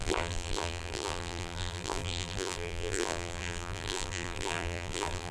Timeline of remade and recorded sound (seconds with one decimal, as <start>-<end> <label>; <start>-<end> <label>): 0.0-5.3 remade